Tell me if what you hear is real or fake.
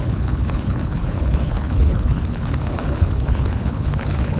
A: fake